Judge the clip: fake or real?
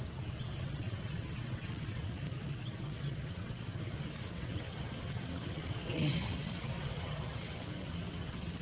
fake